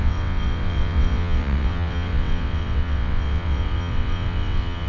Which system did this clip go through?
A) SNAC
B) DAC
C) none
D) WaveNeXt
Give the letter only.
D